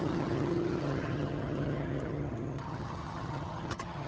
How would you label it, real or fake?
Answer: fake